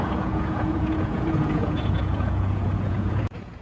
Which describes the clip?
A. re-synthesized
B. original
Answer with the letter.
A